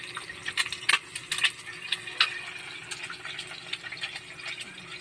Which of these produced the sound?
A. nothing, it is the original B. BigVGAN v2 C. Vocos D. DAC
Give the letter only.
A